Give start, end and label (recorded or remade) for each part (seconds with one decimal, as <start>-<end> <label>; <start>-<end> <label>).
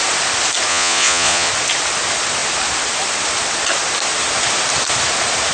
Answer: 0.0-0.7 recorded; 0.7-1.5 remade; 1.5-5.5 recorded